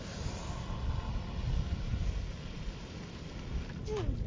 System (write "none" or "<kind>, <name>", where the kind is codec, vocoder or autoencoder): none